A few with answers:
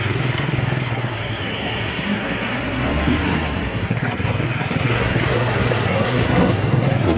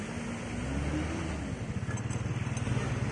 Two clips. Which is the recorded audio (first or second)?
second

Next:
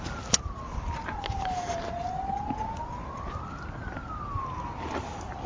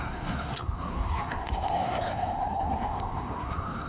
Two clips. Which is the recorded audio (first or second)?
first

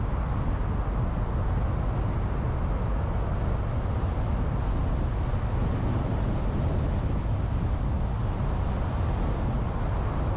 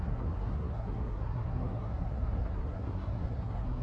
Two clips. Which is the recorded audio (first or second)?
first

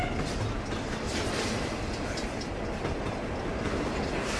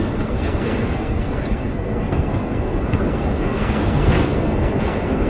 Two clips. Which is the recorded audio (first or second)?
first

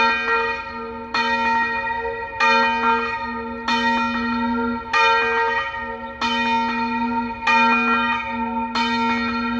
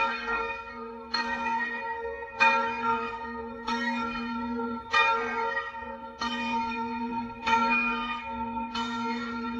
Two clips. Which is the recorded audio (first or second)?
first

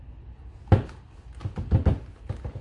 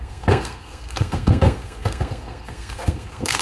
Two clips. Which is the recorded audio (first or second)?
first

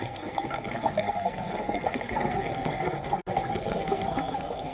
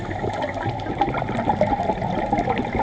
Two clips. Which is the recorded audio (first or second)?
second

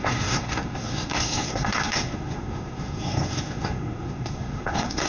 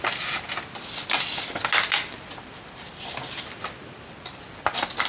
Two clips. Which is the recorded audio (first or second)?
second